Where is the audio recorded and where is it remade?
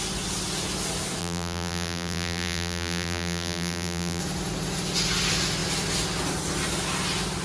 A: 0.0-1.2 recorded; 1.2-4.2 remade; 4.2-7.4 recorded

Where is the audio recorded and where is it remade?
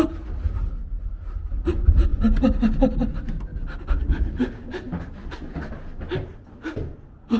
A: 0.0-6.3 recorded; 6.3-6.8 remade; 6.8-7.4 recorded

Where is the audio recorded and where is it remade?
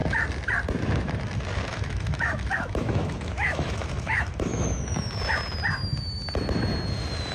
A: 0.0-1.7 recorded; 1.7-5.2 remade; 5.2-7.3 recorded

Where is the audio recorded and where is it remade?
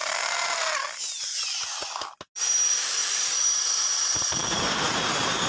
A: 0.0-2.4 recorded; 2.4-5.5 remade